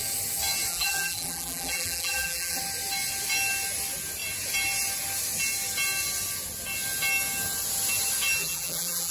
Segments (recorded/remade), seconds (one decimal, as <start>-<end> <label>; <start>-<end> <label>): 0.0-0.7 recorded; 0.7-2.6 remade; 2.6-8.4 recorded; 8.4-9.1 remade